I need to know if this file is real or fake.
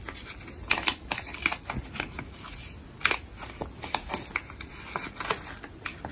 real